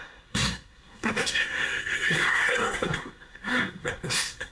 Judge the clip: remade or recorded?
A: remade